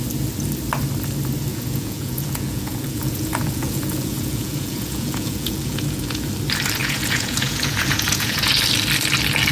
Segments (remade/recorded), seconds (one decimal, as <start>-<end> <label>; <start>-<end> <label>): 0.0-1.5 recorded; 1.5-6.3 remade; 6.3-6.8 recorded; 6.8-8.5 remade; 8.5-9.5 recorded